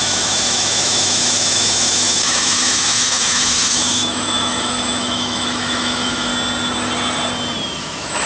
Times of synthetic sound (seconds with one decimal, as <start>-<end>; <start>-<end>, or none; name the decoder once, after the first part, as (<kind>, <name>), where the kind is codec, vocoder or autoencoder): 0.0-6.3 (autoencoder, DAC-VAE); 7.8-8.3